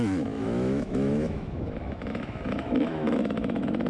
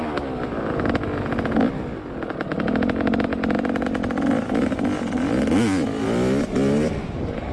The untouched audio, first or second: second